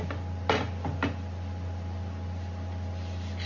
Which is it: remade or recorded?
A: recorded